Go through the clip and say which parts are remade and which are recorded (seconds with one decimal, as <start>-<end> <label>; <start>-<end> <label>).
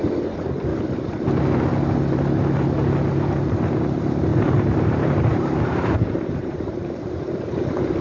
0.0-0.7 remade; 0.7-3.5 recorded; 3.5-8.0 remade